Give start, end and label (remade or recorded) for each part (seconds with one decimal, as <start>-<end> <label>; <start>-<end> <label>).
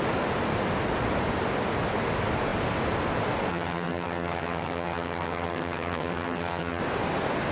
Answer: 0.0-3.5 recorded; 3.5-6.8 remade; 6.8-7.5 recorded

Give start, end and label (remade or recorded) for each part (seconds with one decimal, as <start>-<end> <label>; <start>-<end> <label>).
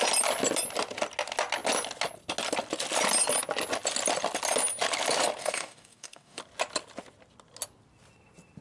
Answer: 0.0-5.4 recorded; 5.4-6.4 remade; 6.4-8.6 recorded